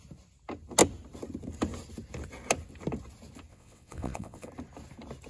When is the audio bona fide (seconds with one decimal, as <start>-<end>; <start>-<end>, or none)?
0.0-3.5; 4.5-5.3